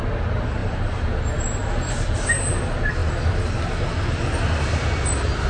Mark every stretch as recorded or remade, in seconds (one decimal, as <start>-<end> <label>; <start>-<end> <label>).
0.0-0.6 recorded; 0.6-1.2 remade; 1.2-1.6 recorded; 1.6-2.4 remade; 2.4-5.5 recorded